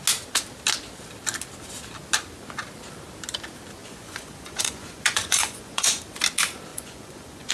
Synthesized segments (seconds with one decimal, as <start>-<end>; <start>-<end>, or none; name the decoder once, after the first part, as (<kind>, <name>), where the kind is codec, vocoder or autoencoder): 3.8-6.0 (vocoder, Vocos); 6.7-7.5

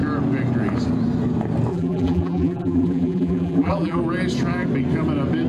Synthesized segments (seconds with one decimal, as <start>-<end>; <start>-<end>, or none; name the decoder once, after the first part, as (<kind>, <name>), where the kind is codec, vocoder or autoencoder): 1.7-4.0 (vocoder, BigVGAN v2)